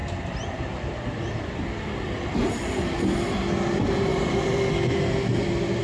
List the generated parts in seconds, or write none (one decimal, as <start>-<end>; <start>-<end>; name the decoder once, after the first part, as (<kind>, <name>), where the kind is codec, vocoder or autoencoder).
0.0-3.5 (vocoder, BigVGAN v2); 4.1-4.6